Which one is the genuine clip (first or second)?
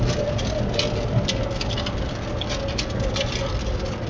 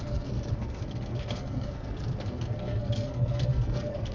first